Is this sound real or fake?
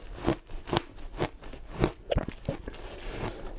real